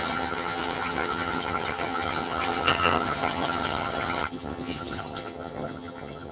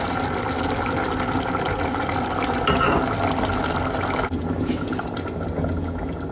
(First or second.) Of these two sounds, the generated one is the first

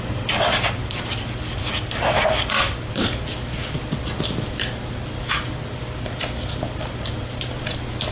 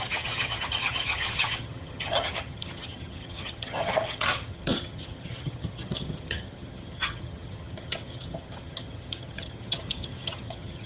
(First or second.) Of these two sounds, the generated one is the second